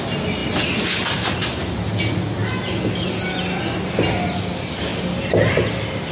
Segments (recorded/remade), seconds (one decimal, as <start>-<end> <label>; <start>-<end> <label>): 0.0-6.1 recorded